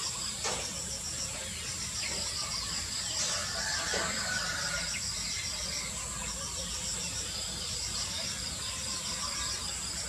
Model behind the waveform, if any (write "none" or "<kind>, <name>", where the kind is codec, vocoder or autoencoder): none